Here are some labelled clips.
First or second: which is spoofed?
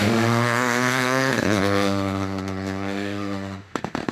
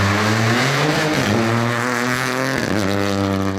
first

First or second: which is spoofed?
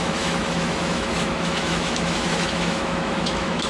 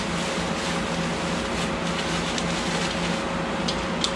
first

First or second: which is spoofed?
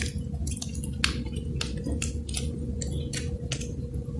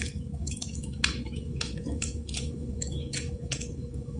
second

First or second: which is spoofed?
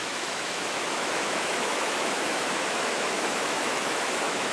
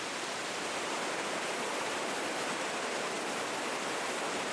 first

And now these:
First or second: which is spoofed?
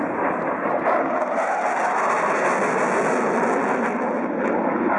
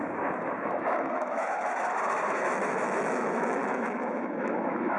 second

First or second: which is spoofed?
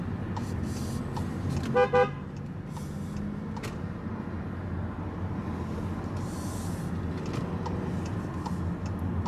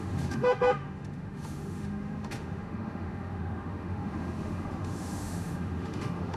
second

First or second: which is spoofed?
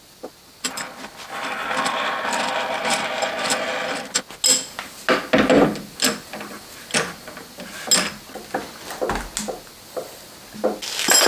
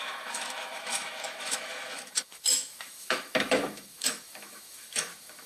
second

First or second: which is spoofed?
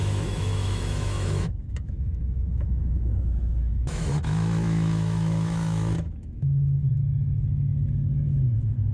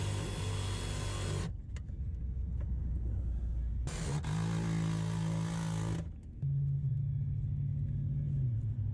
first